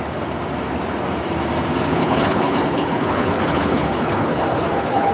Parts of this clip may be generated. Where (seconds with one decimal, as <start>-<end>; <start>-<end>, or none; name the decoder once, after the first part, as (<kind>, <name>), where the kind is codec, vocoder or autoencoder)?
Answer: 1.9-5.1 (codec, HILCodec)